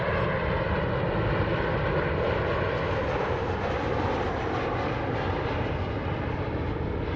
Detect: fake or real real